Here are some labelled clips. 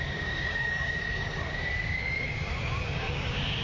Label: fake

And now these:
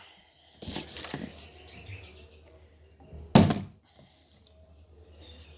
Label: real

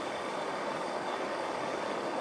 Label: fake